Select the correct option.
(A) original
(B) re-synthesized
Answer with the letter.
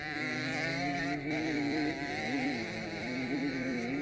B